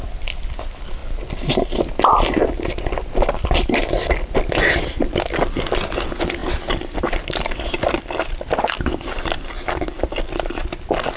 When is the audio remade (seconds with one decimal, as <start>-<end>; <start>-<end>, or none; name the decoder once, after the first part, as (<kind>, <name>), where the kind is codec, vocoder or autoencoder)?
none